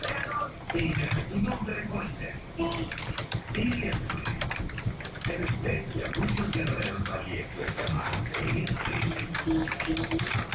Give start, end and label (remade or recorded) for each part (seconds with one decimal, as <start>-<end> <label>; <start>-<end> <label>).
0.0-7.6 recorded; 7.6-8.2 remade; 8.2-10.5 recorded